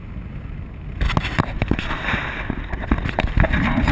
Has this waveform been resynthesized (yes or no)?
no